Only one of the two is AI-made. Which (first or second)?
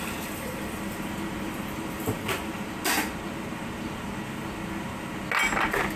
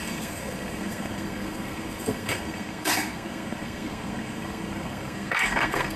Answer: second